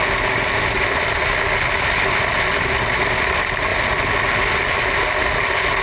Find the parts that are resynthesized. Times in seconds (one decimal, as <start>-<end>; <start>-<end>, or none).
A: 0.0-1.2; 2.9-3.7